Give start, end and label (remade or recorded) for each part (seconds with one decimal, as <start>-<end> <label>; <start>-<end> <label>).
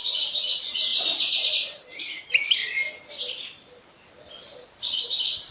0.0-0.9 remade; 0.9-1.5 recorded; 1.5-2.6 remade; 2.6-5.0 recorded; 5.0-5.5 remade